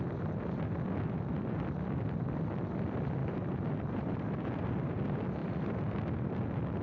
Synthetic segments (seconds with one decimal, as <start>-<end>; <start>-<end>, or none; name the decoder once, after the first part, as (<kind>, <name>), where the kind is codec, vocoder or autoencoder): 3.2-5.0 (vocoder, BigVGAN v2); 5.4-6.0